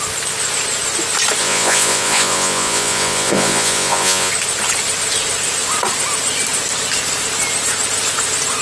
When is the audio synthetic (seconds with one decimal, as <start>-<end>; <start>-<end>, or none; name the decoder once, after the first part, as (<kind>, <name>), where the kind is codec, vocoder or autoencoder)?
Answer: 1.4-4.3 (vocoder, Vocos)